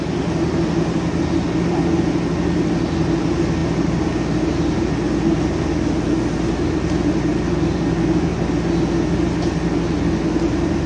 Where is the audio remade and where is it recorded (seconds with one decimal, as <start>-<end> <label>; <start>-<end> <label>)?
0.0-10.9 recorded